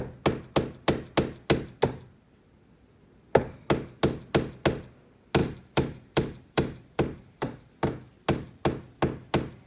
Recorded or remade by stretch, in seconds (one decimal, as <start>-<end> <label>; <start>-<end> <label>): 0.0-5.4 recorded; 5.4-7.7 remade; 7.7-9.7 recorded